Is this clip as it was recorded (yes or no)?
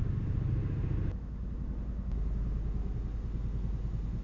yes